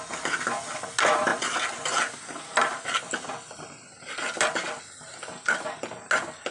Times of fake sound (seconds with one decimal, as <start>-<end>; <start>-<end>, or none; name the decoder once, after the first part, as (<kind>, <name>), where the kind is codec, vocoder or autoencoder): none